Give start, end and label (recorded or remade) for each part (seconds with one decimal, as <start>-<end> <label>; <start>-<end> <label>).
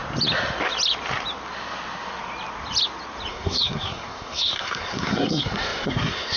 0.0-3.3 recorded; 3.3-6.4 remade